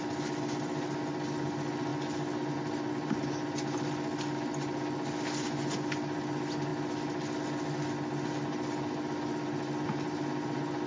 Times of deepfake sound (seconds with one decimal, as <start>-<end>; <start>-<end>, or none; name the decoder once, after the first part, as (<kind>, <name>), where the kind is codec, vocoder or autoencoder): none